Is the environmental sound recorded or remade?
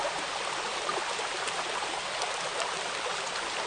remade